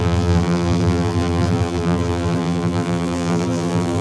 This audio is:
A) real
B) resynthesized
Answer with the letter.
B